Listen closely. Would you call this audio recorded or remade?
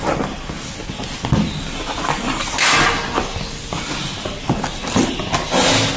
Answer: recorded